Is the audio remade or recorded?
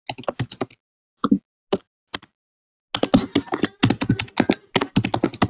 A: recorded